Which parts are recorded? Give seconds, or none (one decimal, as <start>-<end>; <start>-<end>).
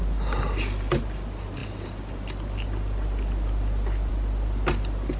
0.0-5.2